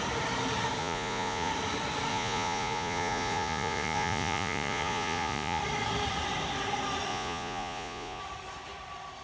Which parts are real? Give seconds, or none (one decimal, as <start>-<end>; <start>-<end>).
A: 0.0-0.8; 1.5-2.1; 5.6-7.1; 8.2-9.2